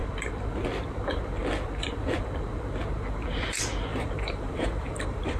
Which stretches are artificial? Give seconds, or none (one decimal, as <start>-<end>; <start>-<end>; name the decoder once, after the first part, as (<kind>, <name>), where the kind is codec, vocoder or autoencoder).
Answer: 3.9-5.4 (vocoder, BigVGAN v2)